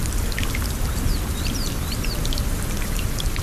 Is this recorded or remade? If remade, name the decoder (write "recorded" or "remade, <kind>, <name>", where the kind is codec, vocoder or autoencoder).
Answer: remade, vocoder, BigVGAN v2